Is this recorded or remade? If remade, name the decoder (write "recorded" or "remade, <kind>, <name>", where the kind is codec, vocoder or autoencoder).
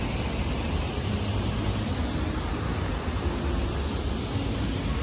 recorded